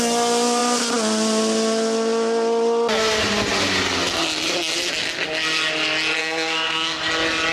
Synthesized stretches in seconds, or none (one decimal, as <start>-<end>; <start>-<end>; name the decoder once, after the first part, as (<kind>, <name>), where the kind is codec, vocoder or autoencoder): 6.2-7.0 (codec, SNAC)